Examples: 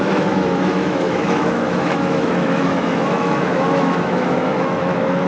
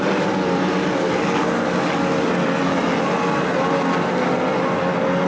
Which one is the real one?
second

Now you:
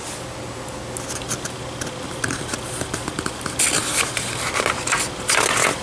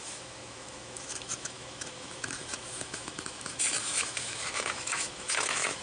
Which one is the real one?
first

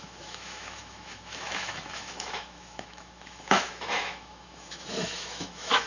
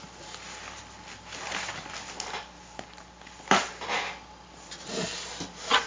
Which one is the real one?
second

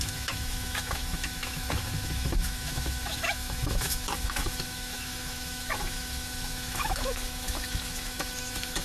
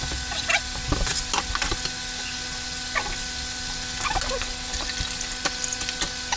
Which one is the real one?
second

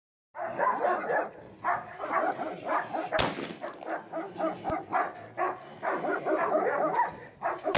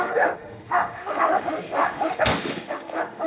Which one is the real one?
first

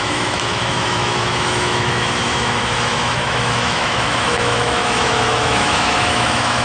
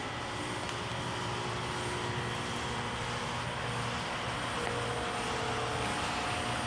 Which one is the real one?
second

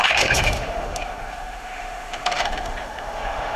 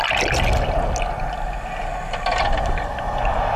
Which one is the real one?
second